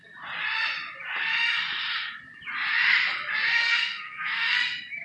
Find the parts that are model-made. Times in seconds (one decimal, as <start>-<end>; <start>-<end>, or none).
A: 3.6-4.6